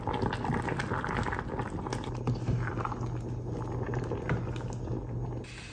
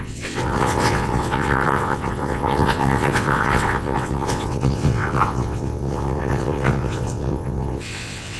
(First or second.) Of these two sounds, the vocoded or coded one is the second